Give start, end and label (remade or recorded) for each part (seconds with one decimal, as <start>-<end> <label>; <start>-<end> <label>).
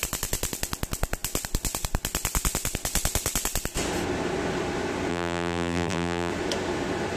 0.0-5.1 recorded; 5.1-6.3 remade; 6.3-7.2 recorded